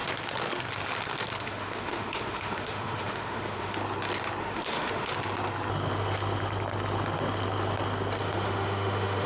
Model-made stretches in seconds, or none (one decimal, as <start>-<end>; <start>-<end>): 1.4-3.8; 4.4-5.1; 8.2-9.3